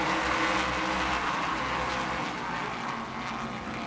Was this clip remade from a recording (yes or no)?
no